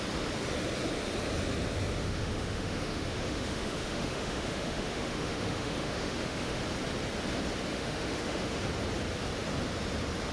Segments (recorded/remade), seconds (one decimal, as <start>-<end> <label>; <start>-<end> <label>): 0.0-2.0 recorded; 2.0-6.6 remade; 6.6-7.7 recorded; 7.7-8.6 remade; 8.6-10.3 recorded